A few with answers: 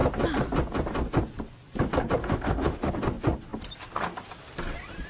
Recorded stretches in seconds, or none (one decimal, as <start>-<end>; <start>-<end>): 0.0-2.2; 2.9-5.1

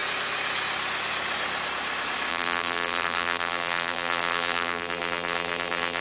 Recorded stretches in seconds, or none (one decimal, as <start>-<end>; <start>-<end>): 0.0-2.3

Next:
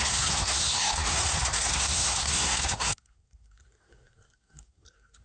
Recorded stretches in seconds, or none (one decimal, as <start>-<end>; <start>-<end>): none

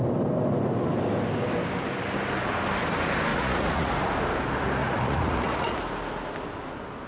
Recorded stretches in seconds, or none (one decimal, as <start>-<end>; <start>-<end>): 0.0-3.3; 3.9-4.8; 5.8-7.1

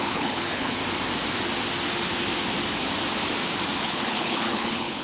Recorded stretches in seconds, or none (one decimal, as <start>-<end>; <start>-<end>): 0.8-3.8

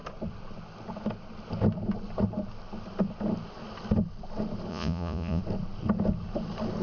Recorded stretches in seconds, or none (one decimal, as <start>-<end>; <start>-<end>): 0.0-4.7; 5.4-6.8

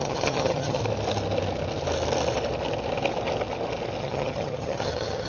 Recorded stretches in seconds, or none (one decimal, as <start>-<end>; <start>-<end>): 0.8-4.0

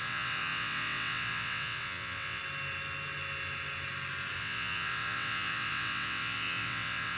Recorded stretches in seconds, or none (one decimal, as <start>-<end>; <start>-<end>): 2.4-4.4